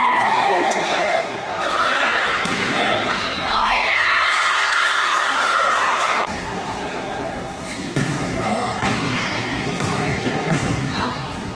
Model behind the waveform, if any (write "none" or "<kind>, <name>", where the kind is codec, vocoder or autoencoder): codec, SNAC